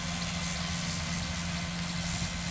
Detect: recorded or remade recorded